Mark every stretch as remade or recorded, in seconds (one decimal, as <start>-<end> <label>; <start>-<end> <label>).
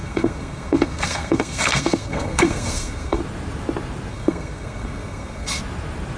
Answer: 0.0-3.2 remade; 3.2-4.1 recorded; 4.1-5.6 remade; 5.6-6.2 recorded